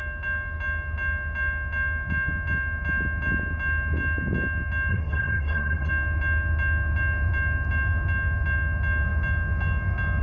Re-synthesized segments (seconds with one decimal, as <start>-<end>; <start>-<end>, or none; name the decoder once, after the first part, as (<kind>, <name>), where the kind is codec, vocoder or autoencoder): 4.9-5.9 (codec, SNAC)